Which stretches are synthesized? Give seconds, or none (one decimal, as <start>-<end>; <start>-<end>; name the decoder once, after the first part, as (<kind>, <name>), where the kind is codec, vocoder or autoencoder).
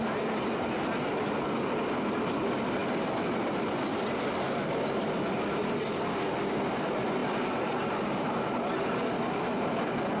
none